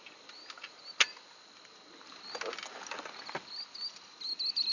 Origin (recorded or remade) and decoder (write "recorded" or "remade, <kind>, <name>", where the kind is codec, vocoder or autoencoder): recorded